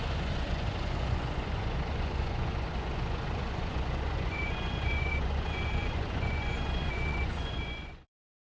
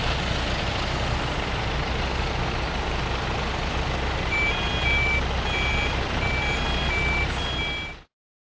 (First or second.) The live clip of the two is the second